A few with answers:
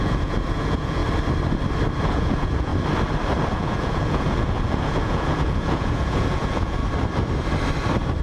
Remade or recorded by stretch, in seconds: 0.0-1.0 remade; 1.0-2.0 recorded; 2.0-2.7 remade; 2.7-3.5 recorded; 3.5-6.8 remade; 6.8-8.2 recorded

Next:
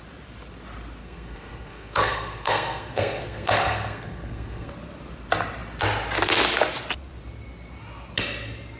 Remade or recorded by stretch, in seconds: 0.0-1.0 recorded; 1.0-4.7 remade; 4.7-8.8 recorded